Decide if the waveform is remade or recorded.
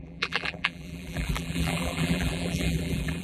remade